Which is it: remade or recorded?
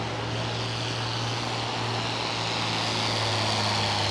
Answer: recorded